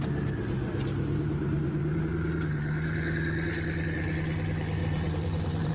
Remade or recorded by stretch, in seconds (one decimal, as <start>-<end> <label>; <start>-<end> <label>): 0.0-1.4 recorded; 1.4-2.1 remade; 2.1-4.8 recorded; 4.8-5.7 remade